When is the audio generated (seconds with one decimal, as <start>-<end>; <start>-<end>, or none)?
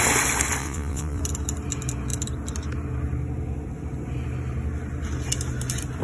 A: 0.6-1.2